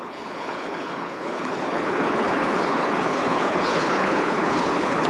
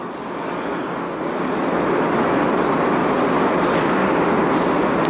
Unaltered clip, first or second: second